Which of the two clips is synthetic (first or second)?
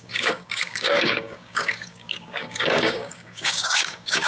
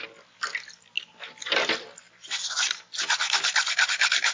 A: first